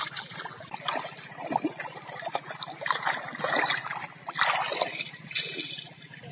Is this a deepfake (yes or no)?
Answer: no